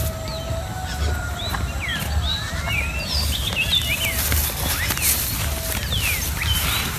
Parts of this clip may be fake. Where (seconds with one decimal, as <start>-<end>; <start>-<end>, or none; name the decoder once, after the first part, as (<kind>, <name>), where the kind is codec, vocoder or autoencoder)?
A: none